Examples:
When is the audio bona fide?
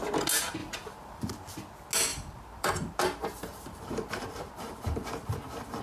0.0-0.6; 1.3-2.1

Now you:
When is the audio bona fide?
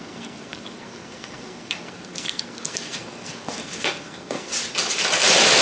4.5-5.6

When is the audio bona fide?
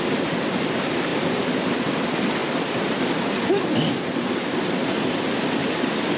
0.0-2.4; 4.2-6.2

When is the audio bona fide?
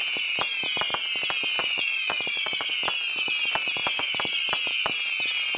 0.0-1.6; 2.7-3.8; 4.5-5.6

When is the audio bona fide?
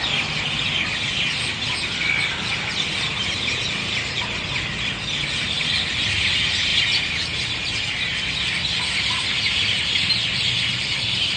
0.0-11.4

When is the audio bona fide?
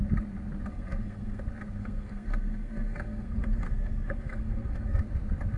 0.0-0.7; 1.4-1.8; 5.0-5.6